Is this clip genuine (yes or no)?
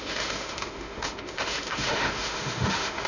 no